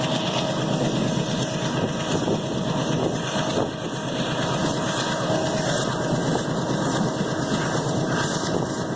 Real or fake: real